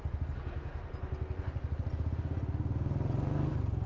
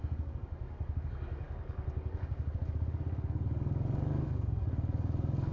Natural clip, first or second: first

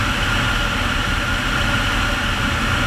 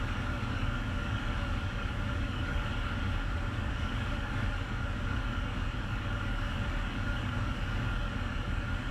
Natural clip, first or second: first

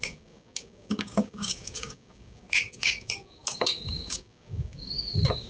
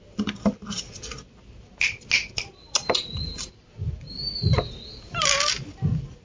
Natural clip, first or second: second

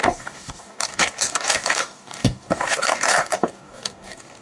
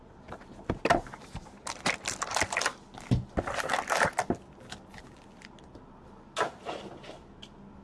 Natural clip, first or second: second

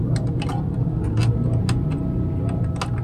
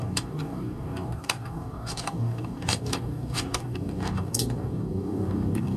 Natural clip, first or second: first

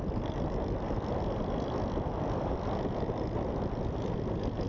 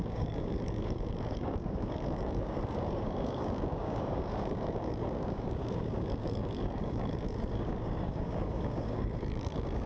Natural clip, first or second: first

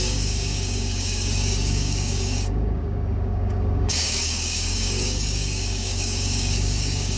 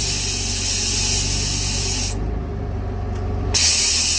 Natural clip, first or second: second